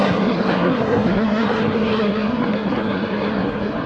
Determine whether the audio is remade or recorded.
remade